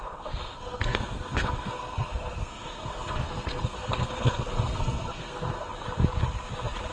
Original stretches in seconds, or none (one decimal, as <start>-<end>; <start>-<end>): 5.7-6.9